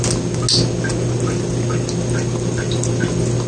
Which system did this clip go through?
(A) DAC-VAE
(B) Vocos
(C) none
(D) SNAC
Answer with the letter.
C